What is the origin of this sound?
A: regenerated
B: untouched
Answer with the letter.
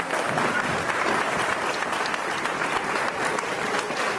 B